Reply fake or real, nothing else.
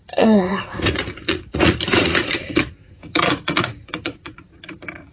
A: fake